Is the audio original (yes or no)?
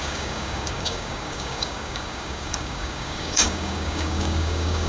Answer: no